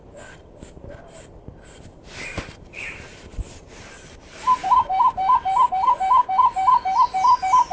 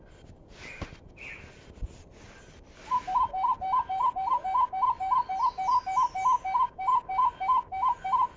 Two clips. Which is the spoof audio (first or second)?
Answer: first